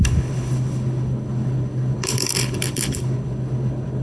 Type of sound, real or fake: fake